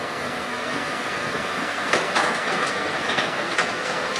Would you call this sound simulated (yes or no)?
yes